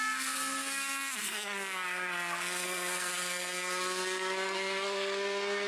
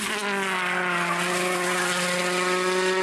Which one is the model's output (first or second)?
first